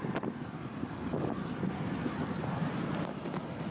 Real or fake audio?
real